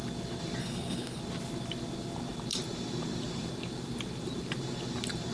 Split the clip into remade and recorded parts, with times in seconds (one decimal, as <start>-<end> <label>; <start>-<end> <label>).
0.0-0.6 recorded; 0.6-1.2 remade; 1.2-5.3 recorded